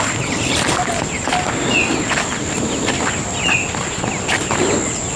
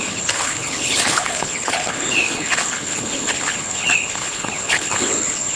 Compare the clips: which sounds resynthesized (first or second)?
second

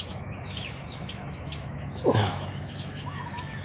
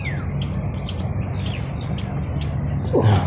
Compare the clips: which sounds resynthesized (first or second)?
first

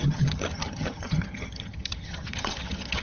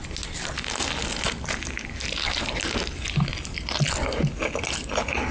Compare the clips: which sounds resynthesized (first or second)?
first